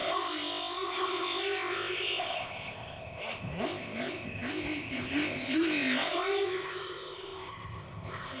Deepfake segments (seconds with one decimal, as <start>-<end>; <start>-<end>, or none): 0.0-8.4